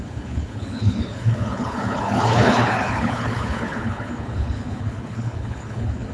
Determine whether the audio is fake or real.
fake